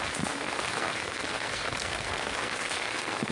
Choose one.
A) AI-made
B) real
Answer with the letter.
A